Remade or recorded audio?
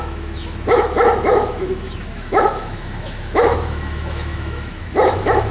remade